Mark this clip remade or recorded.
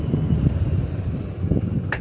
recorded